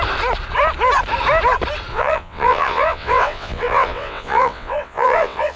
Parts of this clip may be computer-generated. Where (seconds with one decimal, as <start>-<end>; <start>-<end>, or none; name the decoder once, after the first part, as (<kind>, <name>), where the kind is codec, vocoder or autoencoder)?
1.9-5.6 (vocoder, WaveNeXt)